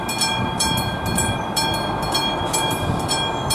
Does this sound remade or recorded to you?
remade